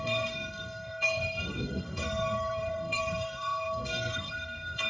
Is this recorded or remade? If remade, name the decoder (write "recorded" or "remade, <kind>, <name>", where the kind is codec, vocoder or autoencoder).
remade, codec, SNAC